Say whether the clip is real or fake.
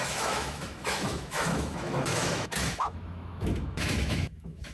fake